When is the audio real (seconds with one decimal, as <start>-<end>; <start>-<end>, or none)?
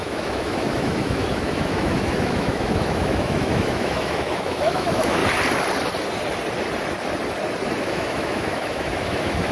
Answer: 5.2-7.8